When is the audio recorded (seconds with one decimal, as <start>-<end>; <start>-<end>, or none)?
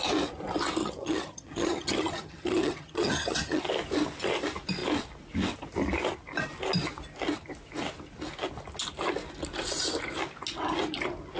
0.0-0.8; 3.6-11.4